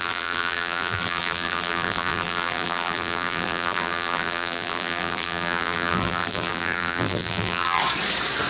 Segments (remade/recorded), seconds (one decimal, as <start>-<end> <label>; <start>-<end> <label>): 0.0-7.8 remade; 7.8-8.5 recorded